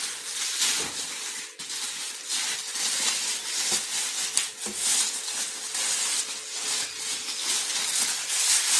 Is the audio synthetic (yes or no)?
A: no